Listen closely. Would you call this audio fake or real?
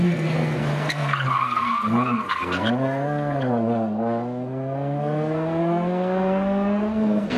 fake